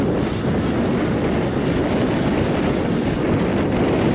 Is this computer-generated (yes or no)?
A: no